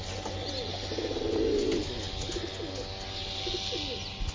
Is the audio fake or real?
real